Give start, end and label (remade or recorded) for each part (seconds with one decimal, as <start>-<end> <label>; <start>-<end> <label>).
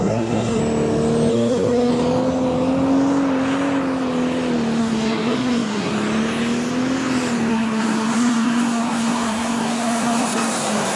0.0-0.6 remade; 0.6-1.3 recorded; 1.3-1.9 remade; 1.9-4.8 recorded; 4.8-5.9 remade; 5.9-7.5 recorded; 7.5-11.0 remade